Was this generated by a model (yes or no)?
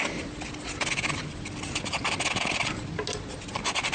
no